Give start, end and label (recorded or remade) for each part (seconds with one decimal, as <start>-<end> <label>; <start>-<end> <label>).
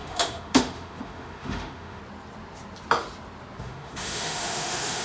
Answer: 0.0-2.0 remade; 2.0-3.6 recorded; 3.6-5.0 remade